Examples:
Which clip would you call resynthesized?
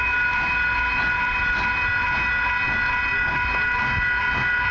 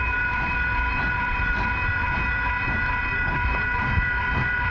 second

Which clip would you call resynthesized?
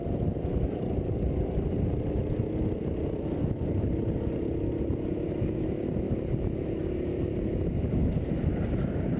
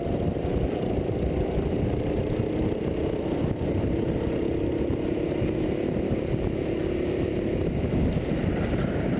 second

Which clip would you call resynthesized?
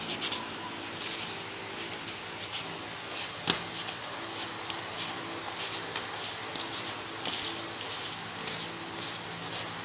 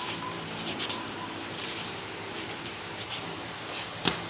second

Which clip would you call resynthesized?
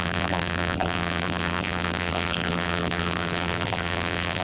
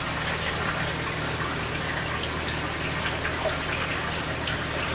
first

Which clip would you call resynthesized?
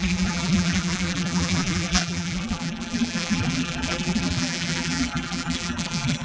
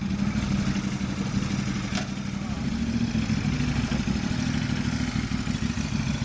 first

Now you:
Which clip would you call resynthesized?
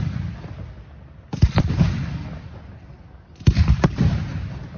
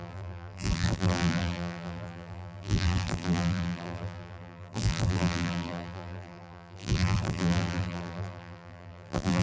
second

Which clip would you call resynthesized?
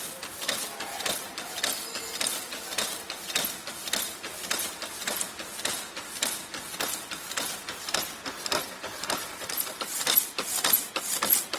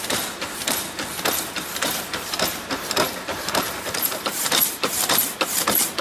second